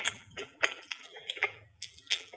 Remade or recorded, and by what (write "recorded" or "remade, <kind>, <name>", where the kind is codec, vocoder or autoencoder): remade, vocoder, BigVGAN v2